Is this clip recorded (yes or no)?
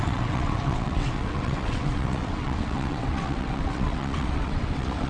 no